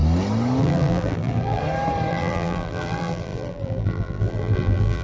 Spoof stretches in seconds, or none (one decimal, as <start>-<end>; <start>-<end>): 0.6-1.6; 2.1-5.0